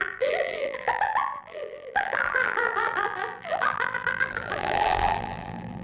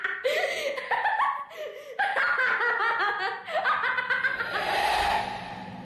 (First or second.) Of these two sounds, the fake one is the first